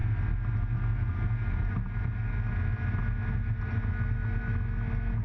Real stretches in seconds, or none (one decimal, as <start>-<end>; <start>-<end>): 0.0-5.2